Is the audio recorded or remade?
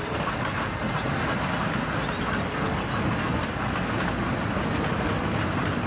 recorded